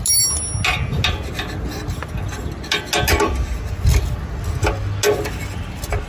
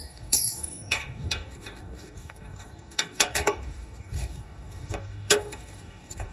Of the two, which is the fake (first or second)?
second